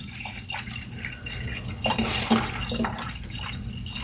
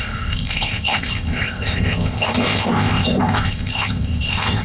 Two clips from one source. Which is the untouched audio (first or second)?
first